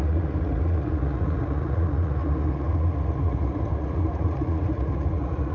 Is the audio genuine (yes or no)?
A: no